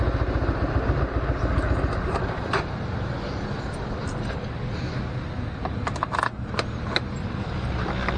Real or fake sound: real